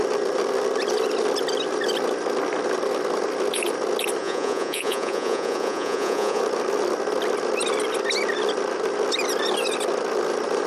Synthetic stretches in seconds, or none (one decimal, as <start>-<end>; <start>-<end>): 4.2-6.4